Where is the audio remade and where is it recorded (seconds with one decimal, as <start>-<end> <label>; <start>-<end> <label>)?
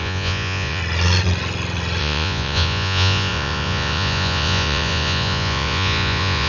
0.0-0.8 remade; 0.8-2.0 recorded; 2.0-6.5 remade